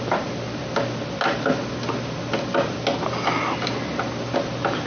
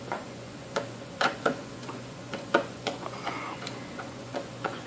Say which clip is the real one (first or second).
first